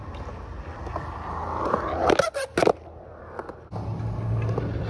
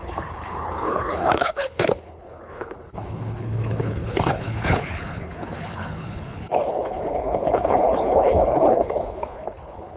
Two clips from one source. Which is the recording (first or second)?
first